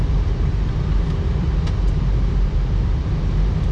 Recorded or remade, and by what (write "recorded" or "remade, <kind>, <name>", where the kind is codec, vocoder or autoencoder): remade, vocoder, BigVGAN v2